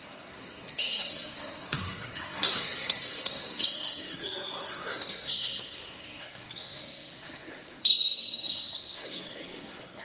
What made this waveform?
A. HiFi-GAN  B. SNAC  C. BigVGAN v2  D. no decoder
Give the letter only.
B